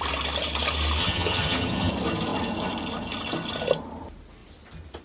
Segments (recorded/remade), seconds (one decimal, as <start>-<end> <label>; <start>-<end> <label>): 0.0-1.0 recorded; 1.0-1.9 remade; 1.9-5.0 recorded